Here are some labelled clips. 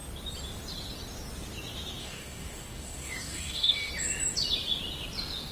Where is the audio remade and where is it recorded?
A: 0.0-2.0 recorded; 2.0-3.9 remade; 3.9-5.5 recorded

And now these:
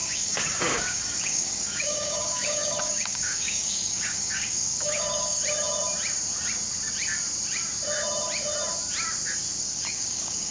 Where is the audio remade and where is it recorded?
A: 0.0-5.4 remade; 5.4-9.6 recorded; 9.6-10.5 remade

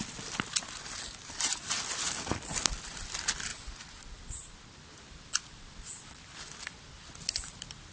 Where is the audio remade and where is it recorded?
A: 0.0-7.9 recorded

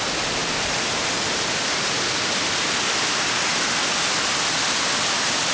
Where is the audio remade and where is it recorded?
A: 0.0-5.5 recorded